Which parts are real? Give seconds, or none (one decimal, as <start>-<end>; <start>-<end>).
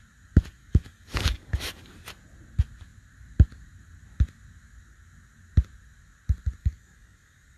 0.0-0.6; 1.9-6.6